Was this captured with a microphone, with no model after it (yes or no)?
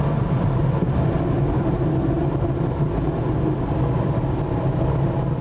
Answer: yes